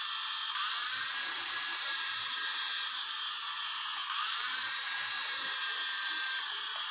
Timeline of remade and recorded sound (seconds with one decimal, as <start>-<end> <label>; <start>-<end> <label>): 0.0-0.8 recorded; 0.8-2.8 remade; 2.8-4.0 recorded; 4.0-5.0 remade; 5.0-6.9 recorded